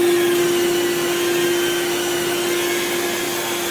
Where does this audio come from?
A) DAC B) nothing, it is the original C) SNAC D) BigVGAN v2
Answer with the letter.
B